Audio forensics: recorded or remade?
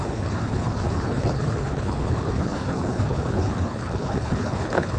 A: remade